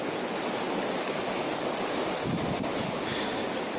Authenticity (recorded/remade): recorded